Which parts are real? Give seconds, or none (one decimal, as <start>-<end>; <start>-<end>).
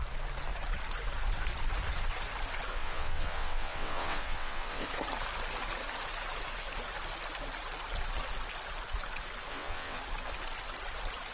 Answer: 0.0-2.7; 4.9-9.5; 10.0-11.3